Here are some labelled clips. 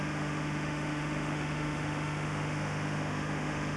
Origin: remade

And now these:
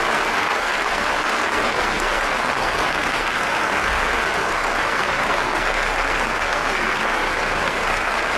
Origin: remade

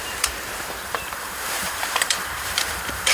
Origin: remade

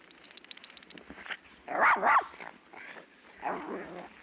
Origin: recorded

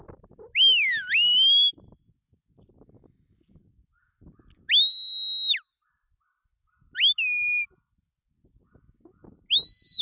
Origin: recorded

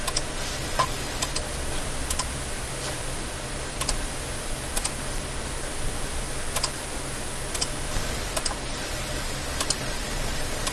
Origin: recorded